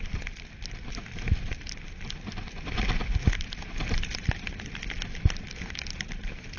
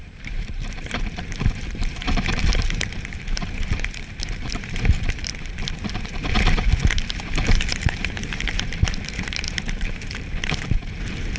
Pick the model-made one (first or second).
second